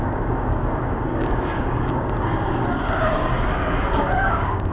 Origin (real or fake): fake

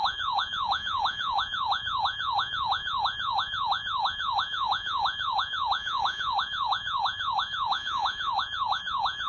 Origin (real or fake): fake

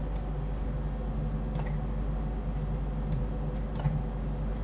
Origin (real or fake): real